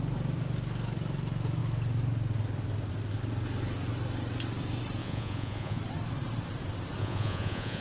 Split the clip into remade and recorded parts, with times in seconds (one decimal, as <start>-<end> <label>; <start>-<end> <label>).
0.0-5.0 recorded; 5.0-5.8 remade; 5.8-7.0 recorded; 7.0-7.8 remade